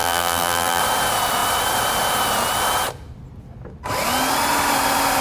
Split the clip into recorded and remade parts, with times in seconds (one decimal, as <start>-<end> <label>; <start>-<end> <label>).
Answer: 0.0-0.8 remade; 0.8-5.2 recorded